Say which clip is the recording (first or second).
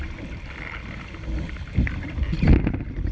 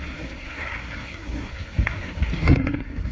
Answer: first